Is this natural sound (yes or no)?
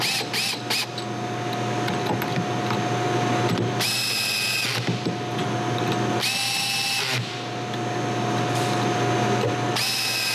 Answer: yes